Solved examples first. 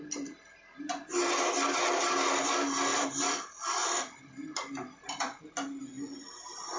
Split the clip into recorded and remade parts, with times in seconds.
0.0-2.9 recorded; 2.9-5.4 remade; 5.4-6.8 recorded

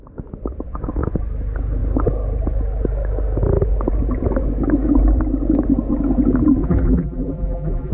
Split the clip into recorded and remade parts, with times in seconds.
0.0-6.6 recorded; 6.6-7.9 remade

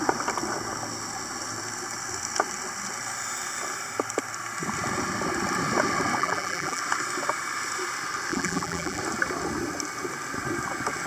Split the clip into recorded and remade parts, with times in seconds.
0.0-6.2 recorded; 6.2-6.8 remade; 6.8-8.3 recorded; 8.3-9.0 remade; 9.0-11.1 recorded

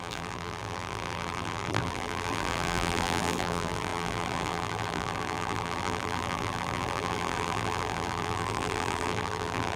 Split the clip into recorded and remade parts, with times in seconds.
0.0-9.8 remade

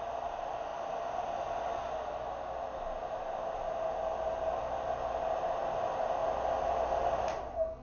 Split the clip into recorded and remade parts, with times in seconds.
0.0-7.8 recorded